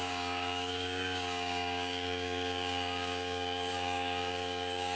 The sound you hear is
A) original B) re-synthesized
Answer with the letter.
B